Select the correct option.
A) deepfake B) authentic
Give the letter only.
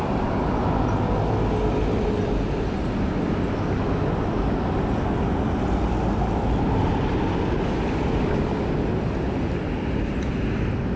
B